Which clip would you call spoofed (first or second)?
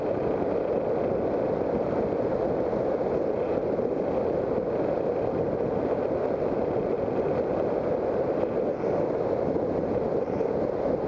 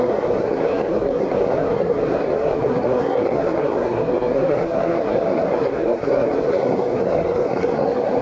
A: second